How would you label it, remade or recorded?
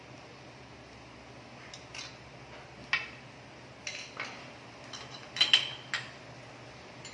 recorded